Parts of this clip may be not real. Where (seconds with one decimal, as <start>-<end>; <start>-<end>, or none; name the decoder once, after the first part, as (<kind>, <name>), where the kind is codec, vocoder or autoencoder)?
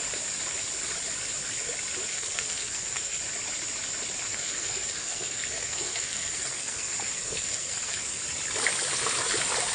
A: 2.1-3.2 (codec, SNAC); 4.3-8.2